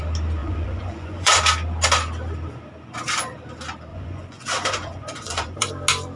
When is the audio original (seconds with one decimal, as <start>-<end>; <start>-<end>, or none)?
0.0-0.4; 1.4-3.9; 5.7-6.2